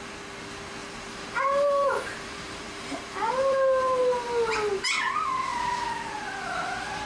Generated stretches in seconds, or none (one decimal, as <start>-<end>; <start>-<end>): 0.8-3.6